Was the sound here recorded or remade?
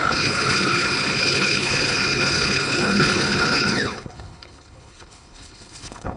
remade